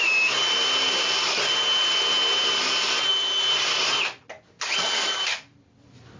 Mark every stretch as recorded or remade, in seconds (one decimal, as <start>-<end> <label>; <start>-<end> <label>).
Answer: 0.0-6.2 recorded